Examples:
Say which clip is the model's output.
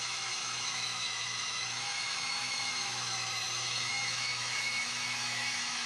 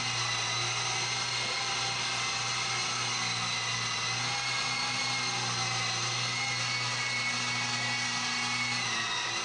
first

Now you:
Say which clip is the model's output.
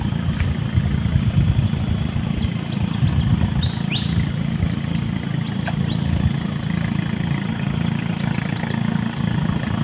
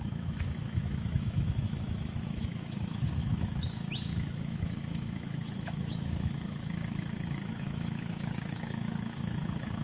second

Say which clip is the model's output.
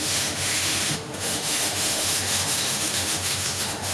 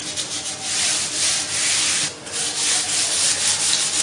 first